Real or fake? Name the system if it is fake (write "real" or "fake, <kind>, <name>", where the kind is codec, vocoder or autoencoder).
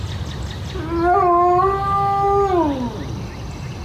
real